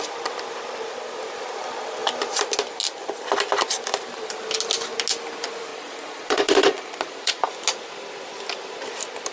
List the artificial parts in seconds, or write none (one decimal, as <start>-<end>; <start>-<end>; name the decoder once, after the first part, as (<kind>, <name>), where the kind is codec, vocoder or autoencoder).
5.7-7.5 (vocoder, Vocos)